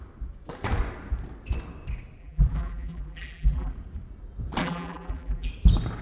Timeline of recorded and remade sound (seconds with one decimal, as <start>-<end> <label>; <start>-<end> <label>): 0.0-2.2 recorded; 2.2-3.7 remade; 3.7-4.6 recorded; 4.6-5.5 remade; 5.5-6.0 recorded